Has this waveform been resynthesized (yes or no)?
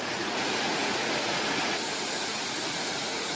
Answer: yes